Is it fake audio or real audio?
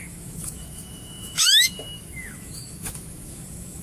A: fake